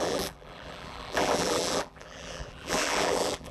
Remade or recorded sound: remade